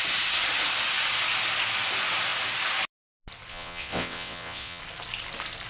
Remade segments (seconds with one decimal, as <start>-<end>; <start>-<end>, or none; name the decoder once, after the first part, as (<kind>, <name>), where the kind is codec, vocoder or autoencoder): 3.5-4.8 (vocoder, WaveNeXt)